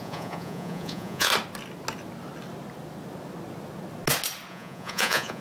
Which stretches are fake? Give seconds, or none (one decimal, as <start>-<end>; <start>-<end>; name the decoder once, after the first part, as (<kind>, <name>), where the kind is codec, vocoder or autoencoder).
0.0-1.3 (vocoder, Vocos); 4.5-5.4